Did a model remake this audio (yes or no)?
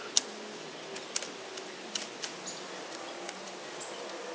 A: no